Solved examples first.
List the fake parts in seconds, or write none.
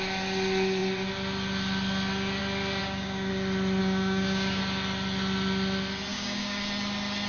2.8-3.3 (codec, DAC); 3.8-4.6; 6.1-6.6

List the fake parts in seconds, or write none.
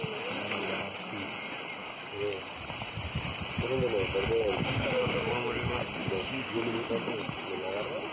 1.8-2.4 (codec, DAC); 4.6-5.3; 6.0-6.9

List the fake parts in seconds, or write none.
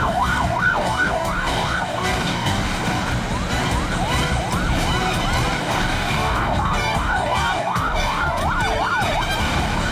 0.0-3.1 (codec, DAC); 5.6-8.4; 9.4-9.9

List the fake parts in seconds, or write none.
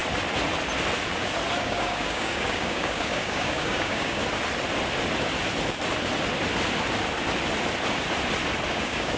1.6-4.2 (codec, DAC); 8.7-9.2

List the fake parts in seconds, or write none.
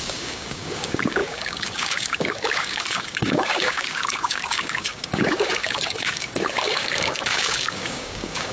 0.0-8.5 (codec, DAC)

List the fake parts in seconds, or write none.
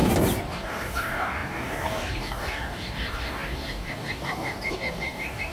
0.5-5.5 (codec, DAC)